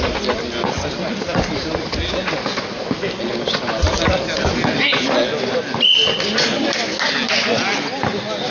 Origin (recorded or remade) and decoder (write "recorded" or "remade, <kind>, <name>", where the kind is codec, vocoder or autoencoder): recorded